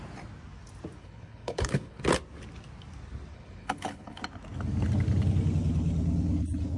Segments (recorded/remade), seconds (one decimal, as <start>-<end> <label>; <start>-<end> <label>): 0.0-1.0 recorded; 1.0-2.0 remade; 2.0-3.3 recorded; 3.3-4.2 remade; 4.2-6.8 recorded